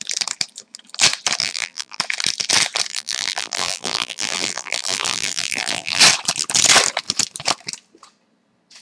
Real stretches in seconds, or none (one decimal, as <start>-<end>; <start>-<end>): 0.0-1.4; 2.0-2.9; 6.0-8.8

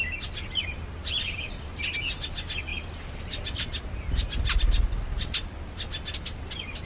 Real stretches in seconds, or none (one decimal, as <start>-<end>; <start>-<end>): 0.0-1.0; 1.7-6.9

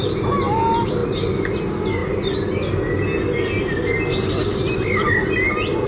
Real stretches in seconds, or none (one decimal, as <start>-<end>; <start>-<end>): 0.0-5.9

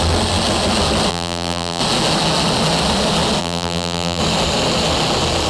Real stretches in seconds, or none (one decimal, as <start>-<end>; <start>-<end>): 0.0-1.1; 1.8-3.4; 4.2-5.5

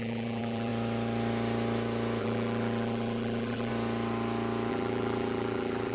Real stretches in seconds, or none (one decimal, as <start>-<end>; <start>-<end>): 0.7-2.2; 3.7-4.7

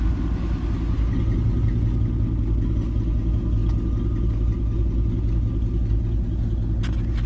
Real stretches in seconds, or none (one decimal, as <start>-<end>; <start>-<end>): 0.0-7.3

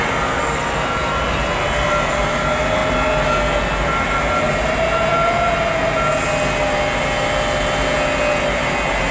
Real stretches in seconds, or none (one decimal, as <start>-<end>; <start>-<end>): 0.0-9.1

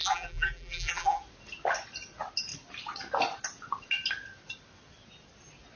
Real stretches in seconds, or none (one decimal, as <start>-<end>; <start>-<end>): 1.2-5.8